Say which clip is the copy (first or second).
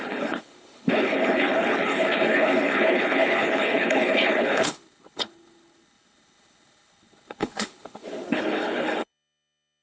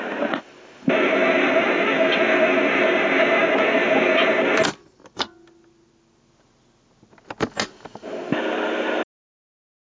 first